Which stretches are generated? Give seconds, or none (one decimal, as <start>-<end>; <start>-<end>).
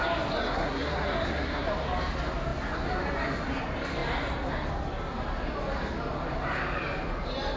0.4-1.7